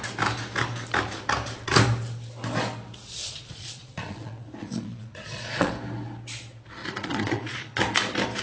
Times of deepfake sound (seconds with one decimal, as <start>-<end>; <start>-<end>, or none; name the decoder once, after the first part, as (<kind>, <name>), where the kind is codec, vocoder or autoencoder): 3.2-5.7 (vocoder, Vocos); 6.8-7.8